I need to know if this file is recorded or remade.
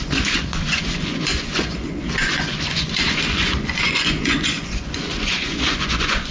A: remade